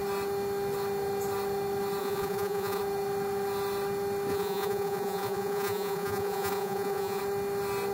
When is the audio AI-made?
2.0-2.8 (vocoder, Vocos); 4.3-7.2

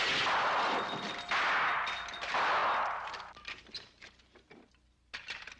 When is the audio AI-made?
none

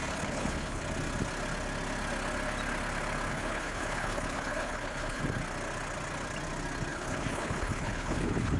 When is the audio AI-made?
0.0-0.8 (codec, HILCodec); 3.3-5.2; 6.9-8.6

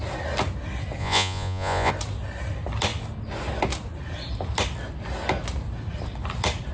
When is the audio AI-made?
1.0-1.9 (vocoder, Vocos)

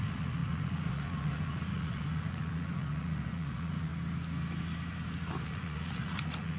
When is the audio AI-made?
0.0-3.9 (vocoder, Vocos); 5.4-6.6